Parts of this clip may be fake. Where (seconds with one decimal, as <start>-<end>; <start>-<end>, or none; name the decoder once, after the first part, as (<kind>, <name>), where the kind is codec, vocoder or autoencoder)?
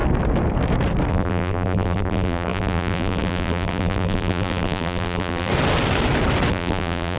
1.1-5.5 (vocoder, BigVGAN v2); 6.5-7.2